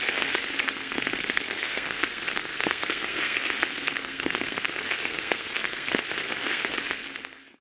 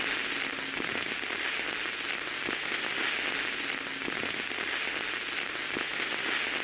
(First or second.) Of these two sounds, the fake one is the first